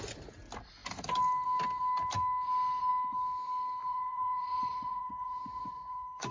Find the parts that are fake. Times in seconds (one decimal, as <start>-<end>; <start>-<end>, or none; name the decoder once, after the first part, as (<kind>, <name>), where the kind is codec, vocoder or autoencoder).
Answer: 3.8-6.3 (vocoder, Vocos)